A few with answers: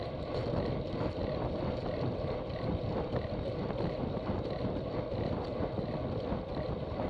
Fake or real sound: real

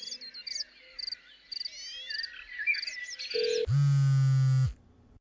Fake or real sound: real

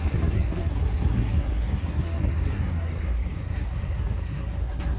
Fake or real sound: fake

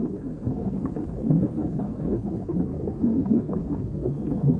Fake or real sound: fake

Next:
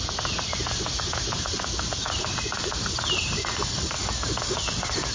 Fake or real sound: real